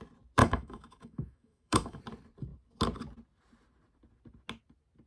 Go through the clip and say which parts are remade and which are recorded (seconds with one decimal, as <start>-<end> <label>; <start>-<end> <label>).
0.0-0.4 recorded; 0.4-2.0 remade; 2.0-5.1 recorded